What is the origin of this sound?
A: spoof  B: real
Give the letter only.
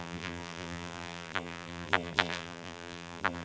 A